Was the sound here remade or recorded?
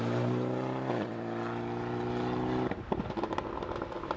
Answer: recorded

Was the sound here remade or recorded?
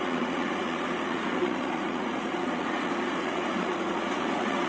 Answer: remade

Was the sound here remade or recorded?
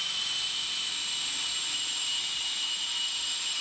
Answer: remade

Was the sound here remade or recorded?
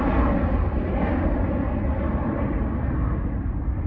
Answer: recorded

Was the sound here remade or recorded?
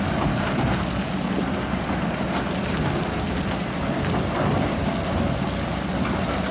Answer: recorded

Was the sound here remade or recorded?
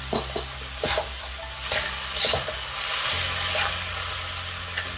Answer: recorded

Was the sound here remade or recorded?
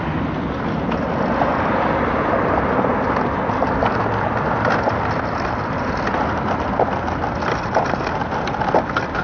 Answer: recorded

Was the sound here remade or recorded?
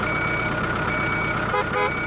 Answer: recorded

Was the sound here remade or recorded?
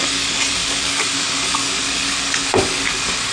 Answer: remade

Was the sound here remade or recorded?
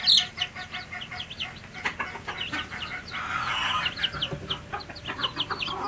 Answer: recorded